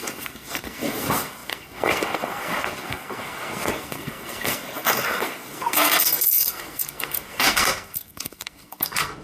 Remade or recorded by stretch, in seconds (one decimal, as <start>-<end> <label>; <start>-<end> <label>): 0.0-9.2 remade